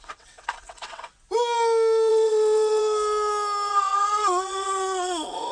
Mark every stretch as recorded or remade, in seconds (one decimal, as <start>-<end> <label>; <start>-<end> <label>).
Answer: 0.0-1.1 remade; 1.1-2.1 recorded; 2.1-2.8 remade; 2.8-3.7 recorded; 3.7-5.5 remade